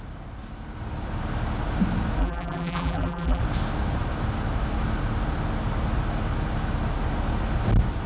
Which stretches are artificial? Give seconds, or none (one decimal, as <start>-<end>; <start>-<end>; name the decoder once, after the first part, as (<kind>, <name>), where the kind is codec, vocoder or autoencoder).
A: 2.2-3.4 (vocoder, BigVGAN v2)